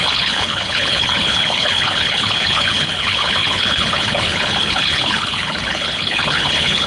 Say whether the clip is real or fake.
fake